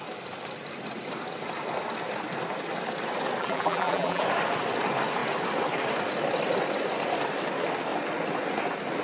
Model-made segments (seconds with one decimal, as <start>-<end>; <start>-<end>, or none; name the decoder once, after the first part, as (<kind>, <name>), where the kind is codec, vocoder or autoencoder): 3.4-4.2 (vocoder, BigVGAN v2)